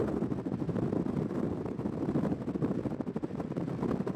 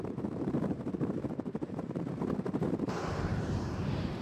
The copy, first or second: second